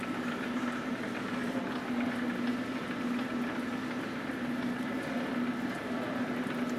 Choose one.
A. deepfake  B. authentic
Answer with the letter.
B